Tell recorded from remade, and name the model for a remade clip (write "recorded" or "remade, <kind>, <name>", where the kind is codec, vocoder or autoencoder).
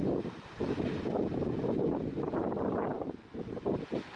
recorded